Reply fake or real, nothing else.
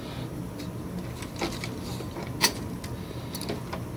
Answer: real